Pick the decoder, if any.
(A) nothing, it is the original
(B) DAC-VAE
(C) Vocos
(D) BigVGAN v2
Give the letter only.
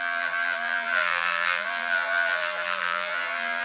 D